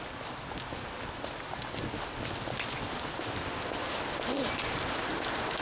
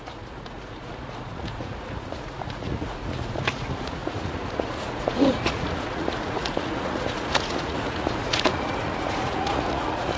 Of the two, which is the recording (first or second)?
first